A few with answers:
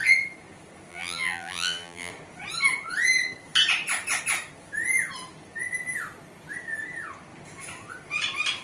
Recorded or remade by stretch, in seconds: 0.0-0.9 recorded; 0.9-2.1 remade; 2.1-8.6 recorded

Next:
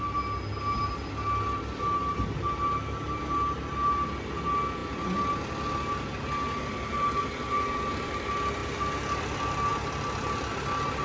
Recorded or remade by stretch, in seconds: 0.0-11.0 recorded

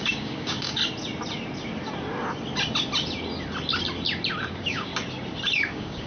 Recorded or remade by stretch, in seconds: 0.0-0.8 remade; 0.8-4.5 recorded; 4.5-4.9 remade; 4.9-5.6 recorded; 5.6-6.1 remade